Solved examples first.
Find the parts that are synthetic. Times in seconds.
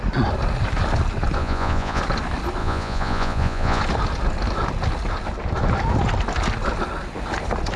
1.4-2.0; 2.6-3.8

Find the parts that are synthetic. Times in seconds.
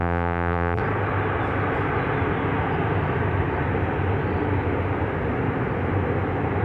0.0-0.8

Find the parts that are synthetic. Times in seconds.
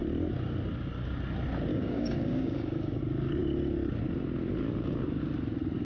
1.7-3.0